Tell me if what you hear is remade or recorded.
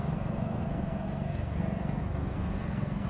remade